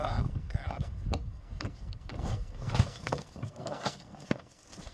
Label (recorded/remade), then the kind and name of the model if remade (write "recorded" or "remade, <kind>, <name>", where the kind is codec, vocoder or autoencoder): remade, codec, SNAC